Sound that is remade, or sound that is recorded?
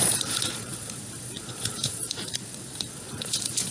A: remade